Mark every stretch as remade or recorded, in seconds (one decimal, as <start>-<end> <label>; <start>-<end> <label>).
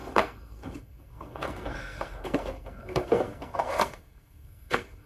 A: 0.0-5.1 remade